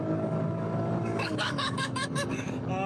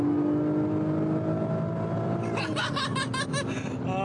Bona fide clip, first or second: second